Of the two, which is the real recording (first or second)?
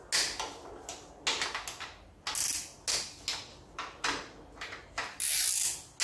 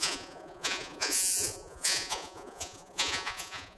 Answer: first